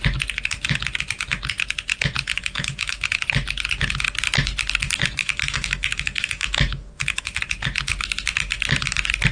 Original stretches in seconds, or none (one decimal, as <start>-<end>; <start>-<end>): 0.0-2.3; 3.1-5.2; 7.4-9.3